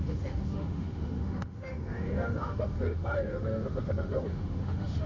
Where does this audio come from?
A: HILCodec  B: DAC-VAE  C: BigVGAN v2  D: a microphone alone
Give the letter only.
B